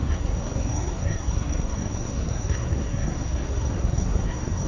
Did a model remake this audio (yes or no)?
yes